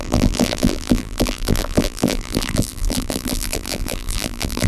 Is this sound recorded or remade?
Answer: remade